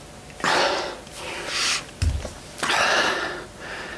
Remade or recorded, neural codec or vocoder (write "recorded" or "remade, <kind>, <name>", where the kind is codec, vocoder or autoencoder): recorded